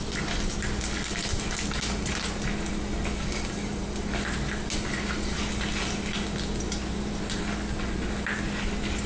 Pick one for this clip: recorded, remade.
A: recorded